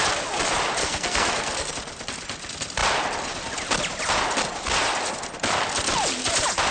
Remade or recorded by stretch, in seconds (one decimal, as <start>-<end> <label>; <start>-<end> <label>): 0.0-0.8 recorded; 0.8-1.7 remade; 1.7-6.7 recorded